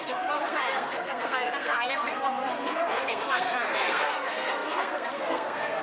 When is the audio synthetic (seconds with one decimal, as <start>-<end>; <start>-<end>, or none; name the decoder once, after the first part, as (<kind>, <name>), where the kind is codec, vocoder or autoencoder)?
0.0-5.8 (codec, SNAC)